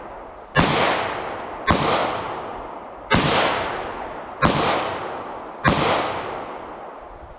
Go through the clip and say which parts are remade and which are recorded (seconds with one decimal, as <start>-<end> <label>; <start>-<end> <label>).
0.0-2.0 recorded; 2.0-4.4 remade; 4.4-7.4 recorded